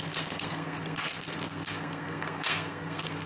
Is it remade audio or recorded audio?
remade